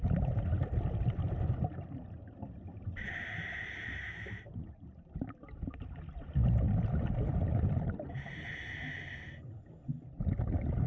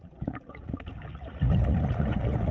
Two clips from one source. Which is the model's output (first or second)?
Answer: second